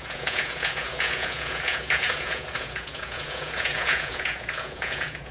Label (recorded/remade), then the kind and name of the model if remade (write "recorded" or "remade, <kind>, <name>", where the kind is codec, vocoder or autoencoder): remade, vocoder, Vocos